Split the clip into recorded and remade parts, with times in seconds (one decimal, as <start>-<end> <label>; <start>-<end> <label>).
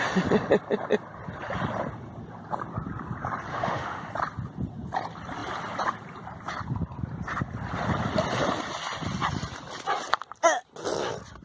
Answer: 0.0-3.5 recorded; 3.5-4.1 remade; 4.1-11.4 recorded